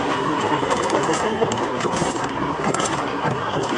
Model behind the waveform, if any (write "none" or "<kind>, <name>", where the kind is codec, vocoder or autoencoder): codec, SNAC